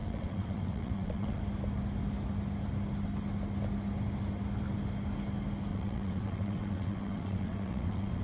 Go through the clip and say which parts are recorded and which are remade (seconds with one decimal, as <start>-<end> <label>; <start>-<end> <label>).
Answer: 0.0-1.4 remade; 1.4-5.7 recorded; 5.7-8.2 remade